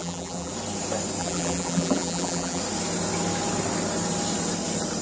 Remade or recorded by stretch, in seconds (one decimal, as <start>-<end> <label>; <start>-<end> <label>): 0.0-0.5 remade; 0.5-1.2 recorded; 1.2-2.6 remade; 2.6-5.0 recorded